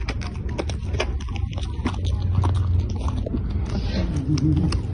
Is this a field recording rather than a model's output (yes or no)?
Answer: yes